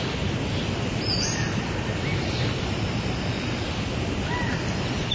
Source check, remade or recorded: recorded